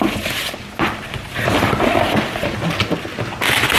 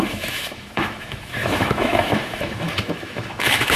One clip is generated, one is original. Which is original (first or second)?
first